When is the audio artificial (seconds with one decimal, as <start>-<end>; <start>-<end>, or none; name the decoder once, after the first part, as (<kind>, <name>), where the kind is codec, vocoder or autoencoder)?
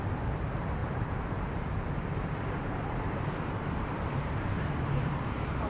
0.0-5.7 (vocoder, BigVGAN v2)